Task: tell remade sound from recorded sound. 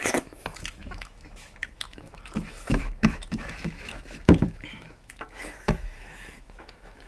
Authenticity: remade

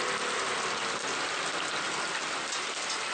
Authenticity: recorded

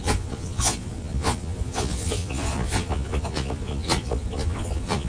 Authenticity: remade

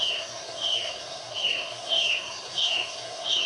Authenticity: remade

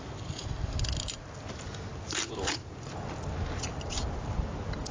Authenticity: recorded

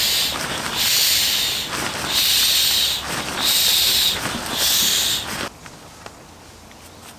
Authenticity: recorded